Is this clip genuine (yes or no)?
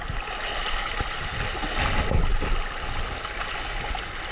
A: yes